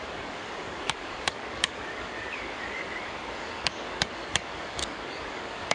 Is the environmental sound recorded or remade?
remade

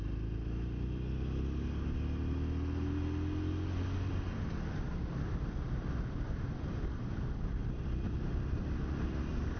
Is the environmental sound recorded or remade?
recorded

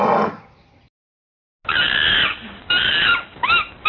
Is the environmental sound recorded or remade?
recorded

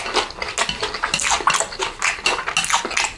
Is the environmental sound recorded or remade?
recorded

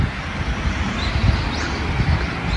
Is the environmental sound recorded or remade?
recorded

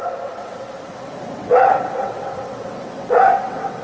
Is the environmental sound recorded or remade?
remade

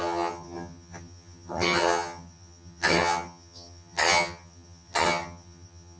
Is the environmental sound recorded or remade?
remade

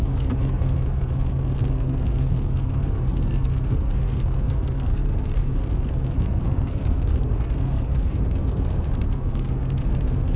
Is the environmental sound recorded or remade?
remade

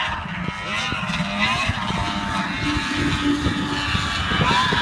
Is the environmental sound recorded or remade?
recorded